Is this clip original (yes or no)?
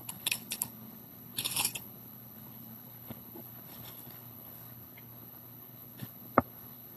no